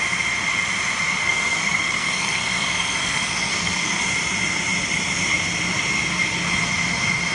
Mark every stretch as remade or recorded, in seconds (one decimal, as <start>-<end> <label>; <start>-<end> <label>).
0.0-1.2 recorded; 1.2-4.0 remade; 4.0-7.3 recorded